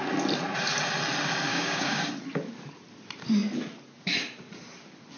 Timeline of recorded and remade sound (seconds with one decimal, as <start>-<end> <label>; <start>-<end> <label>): 0.0-1.5 recorded; 1.5-2.1 remade; 2.1-5.2 recorded